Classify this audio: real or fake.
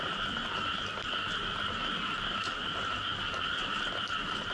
real